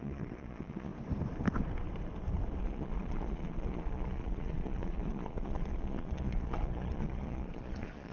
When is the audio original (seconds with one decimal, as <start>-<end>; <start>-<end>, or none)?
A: 0.9-2.6